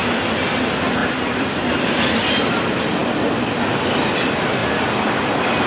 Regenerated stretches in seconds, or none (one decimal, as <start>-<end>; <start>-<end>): 1.0-2.3; 3.0-4.1; 4.6-5.1